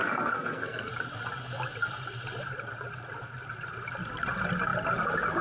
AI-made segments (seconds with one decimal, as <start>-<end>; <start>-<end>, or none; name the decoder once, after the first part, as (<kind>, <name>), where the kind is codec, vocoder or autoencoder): 0.0-0.9 (codec, SNAC)